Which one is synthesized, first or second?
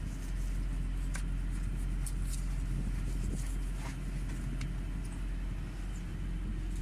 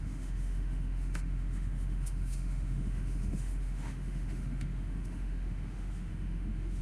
second